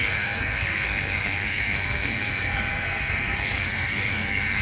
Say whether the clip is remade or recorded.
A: remade